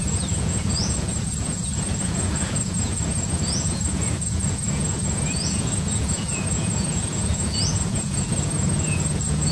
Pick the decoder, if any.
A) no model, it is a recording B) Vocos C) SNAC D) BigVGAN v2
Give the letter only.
B